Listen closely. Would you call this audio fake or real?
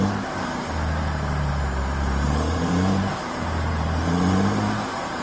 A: fake